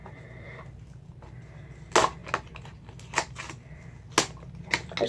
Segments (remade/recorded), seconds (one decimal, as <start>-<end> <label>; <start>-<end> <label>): 0.0-5.1 recorded